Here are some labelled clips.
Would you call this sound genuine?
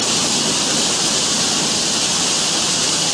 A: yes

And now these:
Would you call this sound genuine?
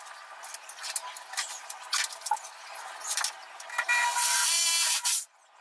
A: yes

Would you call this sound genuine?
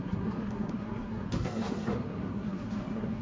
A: no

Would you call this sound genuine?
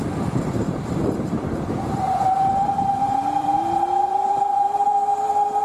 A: no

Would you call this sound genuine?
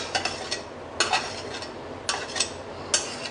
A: yes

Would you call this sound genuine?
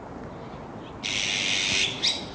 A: yes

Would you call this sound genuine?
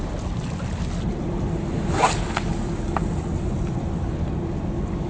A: yes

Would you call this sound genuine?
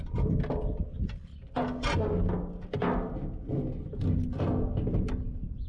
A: yes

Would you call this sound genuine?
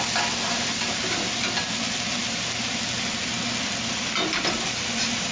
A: yes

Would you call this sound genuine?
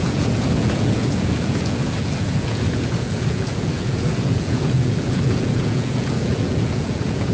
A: no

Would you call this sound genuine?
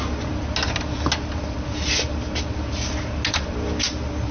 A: yes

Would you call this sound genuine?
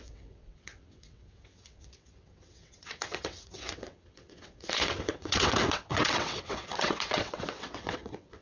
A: no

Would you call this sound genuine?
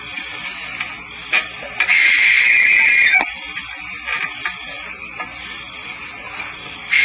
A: yes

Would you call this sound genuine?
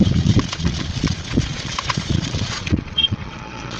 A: no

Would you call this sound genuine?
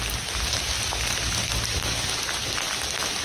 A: yes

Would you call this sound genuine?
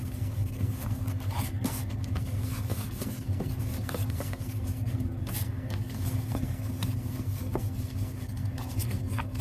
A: no